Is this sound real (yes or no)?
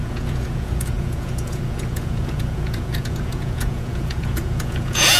no